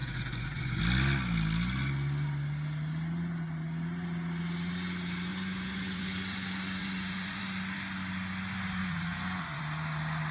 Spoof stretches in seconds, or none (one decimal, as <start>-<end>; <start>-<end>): 0.0-0.8; 5.3-7.4; 8.8-9.6